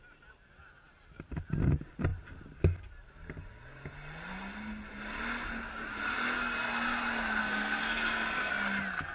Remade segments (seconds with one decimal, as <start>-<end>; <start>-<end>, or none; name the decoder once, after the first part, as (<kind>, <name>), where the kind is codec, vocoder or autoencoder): 7.4-8.5 (codec, SNAC)